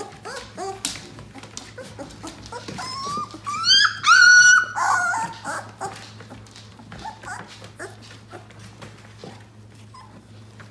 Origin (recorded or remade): recorded